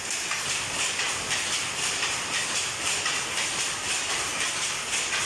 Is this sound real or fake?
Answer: real